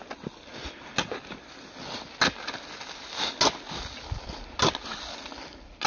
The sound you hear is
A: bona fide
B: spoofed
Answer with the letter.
A